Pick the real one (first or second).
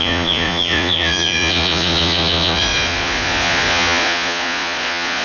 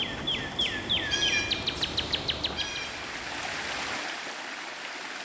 second